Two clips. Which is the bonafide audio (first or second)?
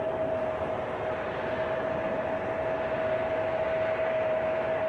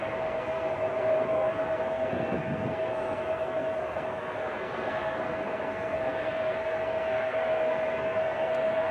first